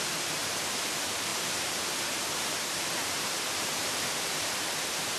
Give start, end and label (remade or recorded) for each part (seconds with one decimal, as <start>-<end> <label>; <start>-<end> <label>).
0.0-5.2 remade